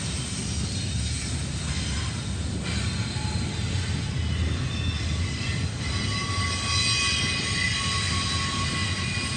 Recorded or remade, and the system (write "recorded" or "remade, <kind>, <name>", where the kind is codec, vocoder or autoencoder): recorded